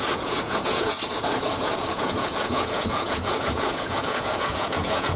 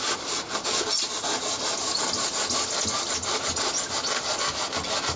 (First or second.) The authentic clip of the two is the second